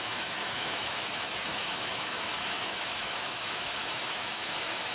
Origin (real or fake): fake